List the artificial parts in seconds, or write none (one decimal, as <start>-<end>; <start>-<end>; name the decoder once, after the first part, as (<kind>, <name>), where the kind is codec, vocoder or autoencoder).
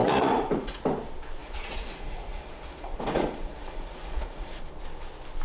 0.0-0.8 (vocoder, Vocos); 1.4-4.6